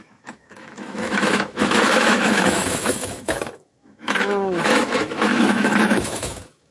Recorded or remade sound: remade